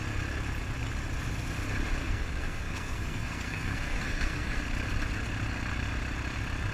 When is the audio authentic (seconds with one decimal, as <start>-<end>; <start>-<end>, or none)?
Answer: 0.0-2.0; 4.6-6.7